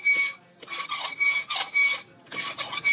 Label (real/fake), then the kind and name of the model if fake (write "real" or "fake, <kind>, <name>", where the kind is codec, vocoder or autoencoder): real